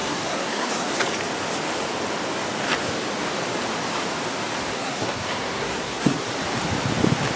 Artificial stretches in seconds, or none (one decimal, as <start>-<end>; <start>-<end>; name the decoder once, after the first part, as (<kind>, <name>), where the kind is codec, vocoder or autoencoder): 0.0-1.0 (codec, SNAC); 4.7-6.3